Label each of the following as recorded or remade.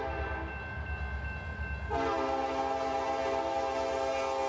recorded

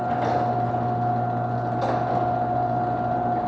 recorded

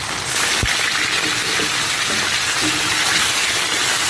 recorded